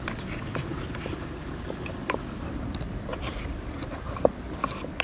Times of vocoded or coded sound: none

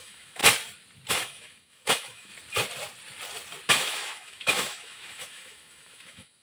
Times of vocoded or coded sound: 0.0-0.4; 1.1-2.3; 3.7-6.4

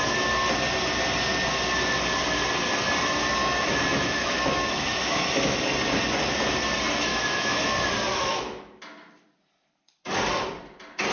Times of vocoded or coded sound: 3.4-5.6; 7.1-7.6; 8.1-8.8

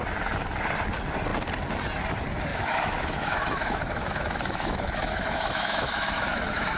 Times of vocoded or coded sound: 2.5-6.8

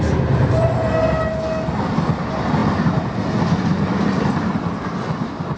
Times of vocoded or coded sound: none